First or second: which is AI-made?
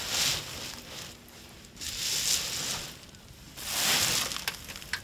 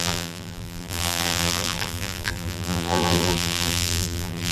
second